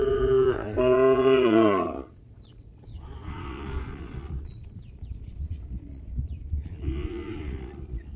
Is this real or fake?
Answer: fake